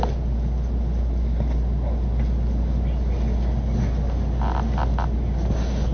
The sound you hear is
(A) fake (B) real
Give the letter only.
B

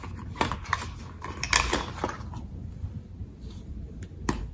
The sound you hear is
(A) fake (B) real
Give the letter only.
B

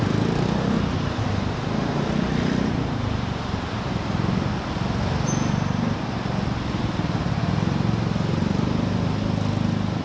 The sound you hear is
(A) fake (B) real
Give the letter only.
B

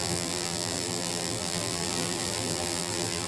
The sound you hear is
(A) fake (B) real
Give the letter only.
A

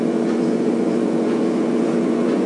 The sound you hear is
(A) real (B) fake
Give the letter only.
B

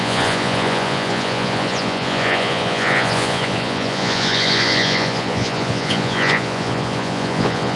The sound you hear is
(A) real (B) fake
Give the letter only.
B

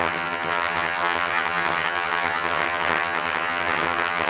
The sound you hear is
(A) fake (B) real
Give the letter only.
A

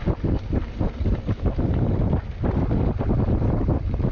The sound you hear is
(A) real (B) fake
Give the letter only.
A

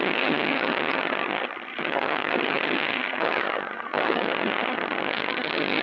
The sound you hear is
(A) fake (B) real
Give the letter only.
A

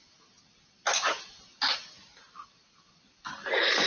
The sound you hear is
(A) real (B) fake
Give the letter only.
A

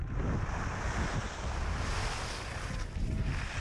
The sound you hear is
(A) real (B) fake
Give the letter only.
A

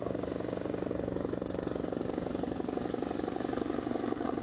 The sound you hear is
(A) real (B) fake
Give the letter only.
B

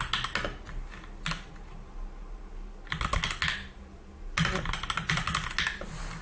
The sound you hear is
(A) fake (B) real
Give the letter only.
B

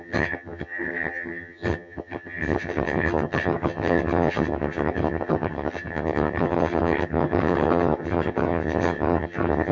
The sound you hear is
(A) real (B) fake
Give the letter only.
B